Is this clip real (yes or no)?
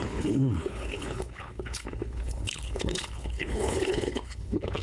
no